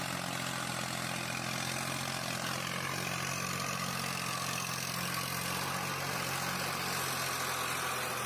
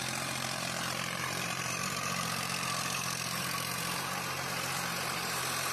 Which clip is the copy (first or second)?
second